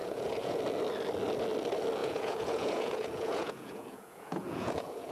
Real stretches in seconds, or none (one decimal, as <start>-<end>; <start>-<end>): 0.6-2.0